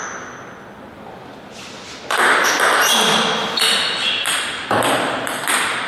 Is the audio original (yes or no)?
yes